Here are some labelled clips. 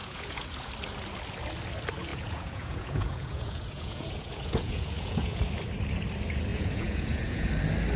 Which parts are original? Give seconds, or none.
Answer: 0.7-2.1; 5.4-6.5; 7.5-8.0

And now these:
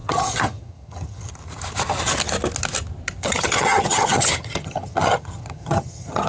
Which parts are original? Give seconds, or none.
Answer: 1.3-3.2

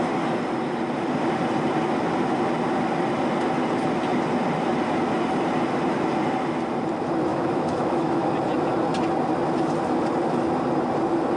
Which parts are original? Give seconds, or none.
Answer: 0.0-7.3; 8.3-11.4

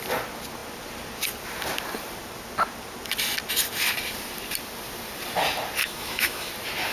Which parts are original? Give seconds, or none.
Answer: 0.0-5.8; 6.5-6.9

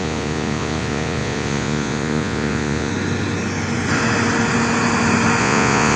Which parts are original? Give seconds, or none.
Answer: 2.9-5.4